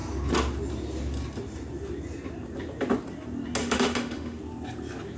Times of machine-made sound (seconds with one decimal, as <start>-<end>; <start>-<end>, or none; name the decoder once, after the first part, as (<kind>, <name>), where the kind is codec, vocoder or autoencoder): 3.6-4.4 (autoencoder, DAC-VAE)